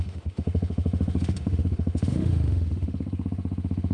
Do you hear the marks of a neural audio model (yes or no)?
yes